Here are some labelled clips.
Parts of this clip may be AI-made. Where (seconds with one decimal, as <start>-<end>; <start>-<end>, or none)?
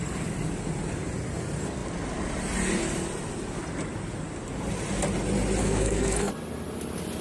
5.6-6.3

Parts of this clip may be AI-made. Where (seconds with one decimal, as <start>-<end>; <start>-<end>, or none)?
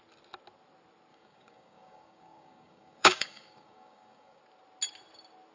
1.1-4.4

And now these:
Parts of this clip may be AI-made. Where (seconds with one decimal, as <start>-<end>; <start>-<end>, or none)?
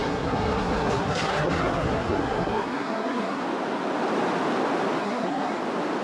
0.0-3.4; 5.0-5.6